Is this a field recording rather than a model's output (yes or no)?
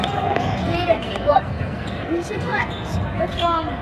no